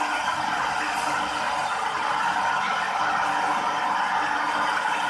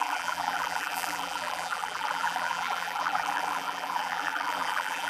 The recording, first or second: first